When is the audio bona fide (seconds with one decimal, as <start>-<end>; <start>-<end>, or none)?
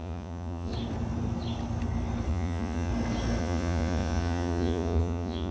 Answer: 0.7-2.3; 2.9-3.4